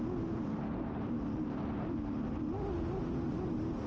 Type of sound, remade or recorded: recorded